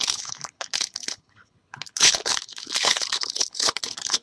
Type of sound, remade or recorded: remade